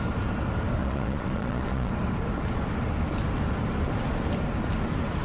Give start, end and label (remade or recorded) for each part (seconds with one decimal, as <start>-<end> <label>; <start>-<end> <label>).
0.0-0.8 recorded; 0.8-1.9 remade; 1.9-5.2 recorded